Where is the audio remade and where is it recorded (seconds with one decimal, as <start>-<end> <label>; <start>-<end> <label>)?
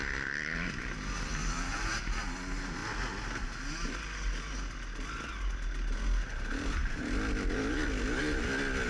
0.0-1.4 recorded; 1.4-2.0 remade; 2.0-8.9 recorded